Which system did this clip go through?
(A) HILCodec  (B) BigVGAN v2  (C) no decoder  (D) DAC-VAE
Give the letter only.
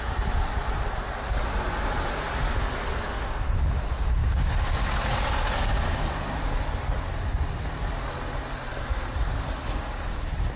C